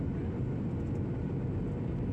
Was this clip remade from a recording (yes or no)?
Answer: no